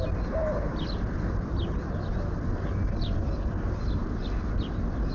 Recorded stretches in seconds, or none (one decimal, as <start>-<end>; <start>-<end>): 0.0-5.1